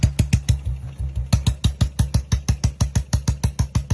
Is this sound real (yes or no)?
yes